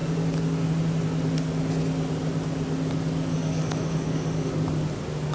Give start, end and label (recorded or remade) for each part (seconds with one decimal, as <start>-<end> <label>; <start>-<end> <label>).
0.0-3.3 recorded; 3.3-4.5 remade; 4.5-5.3 recorded